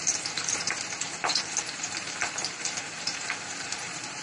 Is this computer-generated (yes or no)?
yes